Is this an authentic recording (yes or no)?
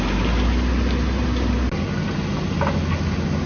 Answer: yes